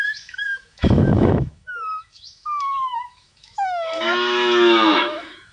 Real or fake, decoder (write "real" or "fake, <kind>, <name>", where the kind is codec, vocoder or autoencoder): fake, autoencoder, DAC-VAE